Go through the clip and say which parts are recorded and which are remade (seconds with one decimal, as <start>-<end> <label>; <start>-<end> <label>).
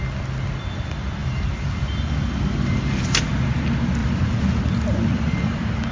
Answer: 0.0-1.2 recorded; 1.2-3.3 remade; 3.3-4.0 recorded; 4.0-4.6 remade; 4.6-5.9 recorded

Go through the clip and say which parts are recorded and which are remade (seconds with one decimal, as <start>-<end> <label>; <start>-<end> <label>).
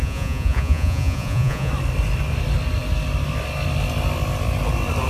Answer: 0.0-1.7 remade; 1.7-5.1 recorded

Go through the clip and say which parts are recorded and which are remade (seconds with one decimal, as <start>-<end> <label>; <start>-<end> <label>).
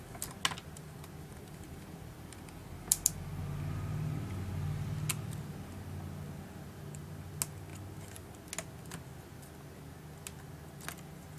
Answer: 0.0-1.3 recorded; 1.3-3.4 remade; 3.4-11.4 recorded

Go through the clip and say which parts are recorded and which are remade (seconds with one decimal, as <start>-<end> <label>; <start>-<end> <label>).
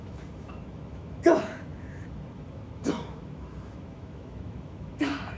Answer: 0.0-5.4 remade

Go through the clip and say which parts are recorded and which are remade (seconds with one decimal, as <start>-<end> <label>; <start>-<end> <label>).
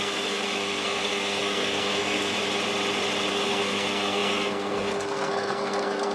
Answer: 0.0-2.4 remade; 2.4-3.3 recorded; 3.3-6.1 remade